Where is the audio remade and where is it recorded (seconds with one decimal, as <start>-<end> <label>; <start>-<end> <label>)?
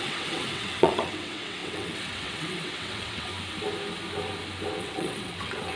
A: 0.0-3.3 remade; 3.3-4.8 recorded; 4.8-5.8 remade